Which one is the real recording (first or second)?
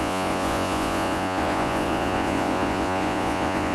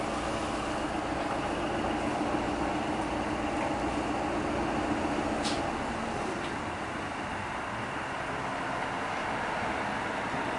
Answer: second